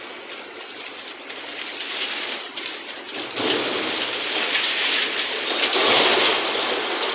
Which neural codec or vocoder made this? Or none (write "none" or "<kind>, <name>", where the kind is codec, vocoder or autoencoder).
none